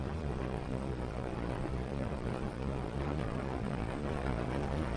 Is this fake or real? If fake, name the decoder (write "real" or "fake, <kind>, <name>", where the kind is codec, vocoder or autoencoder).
fake, vocoder, Vocos